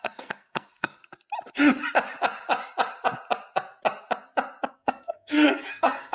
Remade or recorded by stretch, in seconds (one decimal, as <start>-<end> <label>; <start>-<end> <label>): 0.0-1.0 remade; 1.0-4.7 recorded; 4.7-6.1 remade